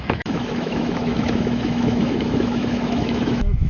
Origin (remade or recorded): remade